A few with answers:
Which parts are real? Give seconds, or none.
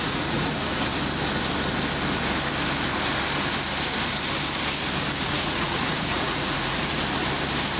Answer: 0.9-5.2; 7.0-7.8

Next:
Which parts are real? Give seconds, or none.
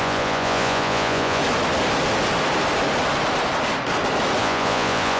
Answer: 1.4-4.4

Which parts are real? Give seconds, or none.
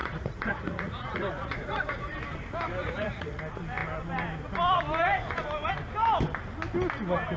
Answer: 2.2-2.8; 3.4-7.4